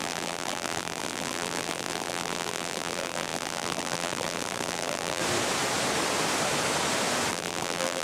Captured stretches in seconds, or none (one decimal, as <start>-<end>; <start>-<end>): 5.2-7.3